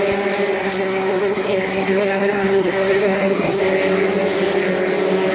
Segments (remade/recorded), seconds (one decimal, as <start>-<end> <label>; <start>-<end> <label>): 0.0-0.6 recorded; 0.6-3.6 remade; 3.6-5.3 recorded